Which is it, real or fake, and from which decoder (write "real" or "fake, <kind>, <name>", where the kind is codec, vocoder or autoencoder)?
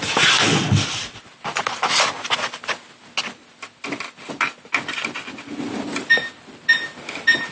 real